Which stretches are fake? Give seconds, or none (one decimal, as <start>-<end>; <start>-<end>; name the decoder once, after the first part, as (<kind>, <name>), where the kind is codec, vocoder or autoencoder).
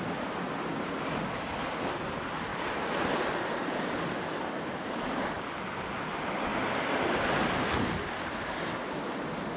none